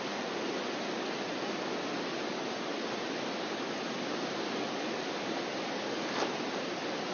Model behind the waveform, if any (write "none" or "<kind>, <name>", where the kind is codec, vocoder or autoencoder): none